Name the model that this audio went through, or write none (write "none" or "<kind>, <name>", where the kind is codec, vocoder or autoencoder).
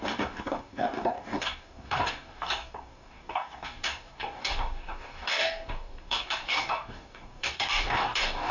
codec, DAC